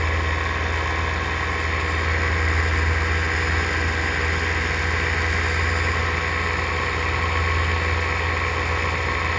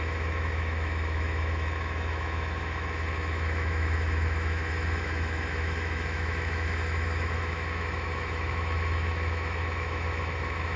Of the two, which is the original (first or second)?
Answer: first